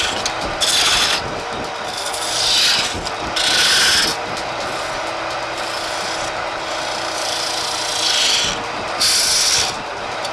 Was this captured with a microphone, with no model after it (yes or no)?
yes